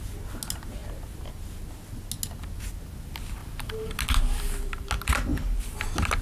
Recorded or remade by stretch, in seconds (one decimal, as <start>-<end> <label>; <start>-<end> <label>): 0.0-3.4 recorded; 3.4-3.9 remade; 3.9-6.2 recorded